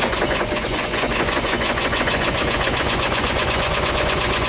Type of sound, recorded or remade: remade